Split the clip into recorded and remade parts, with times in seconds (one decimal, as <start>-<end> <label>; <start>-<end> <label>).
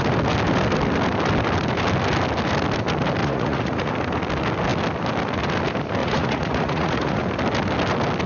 0.0-3.2 recorded; 3.2-3.9 remade; 3.9-6.0 recorded; 6.0-7.2 remade; 7.2-8.3 recorded